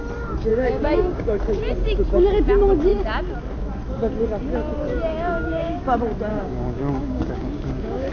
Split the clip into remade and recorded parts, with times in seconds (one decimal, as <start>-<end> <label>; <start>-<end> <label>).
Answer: 0.0-0.5 recorded; 0.5-1.4 remade; 1.4-5.1 recorded; 5.1-5.8 remade; 5.8-6.3 recorded; 6.3-8.1 remade